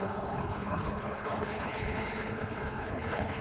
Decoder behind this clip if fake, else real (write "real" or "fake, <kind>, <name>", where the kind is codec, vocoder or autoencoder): fake, codec, HILCodec